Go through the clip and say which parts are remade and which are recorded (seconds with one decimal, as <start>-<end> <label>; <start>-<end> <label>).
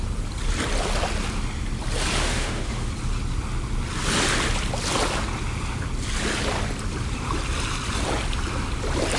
0.0-2.2 recorded; 2.2-2.9 remade; 2.9-9.2 recorded